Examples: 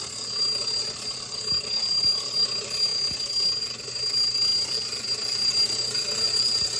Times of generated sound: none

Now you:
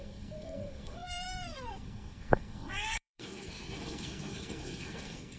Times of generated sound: 0.0-5.4

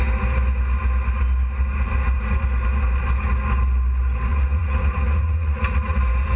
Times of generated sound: 4.3-6.0

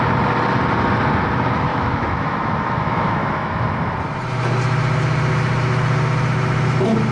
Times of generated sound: 1.7-3.6

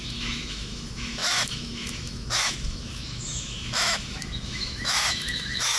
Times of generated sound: 0.0-5.8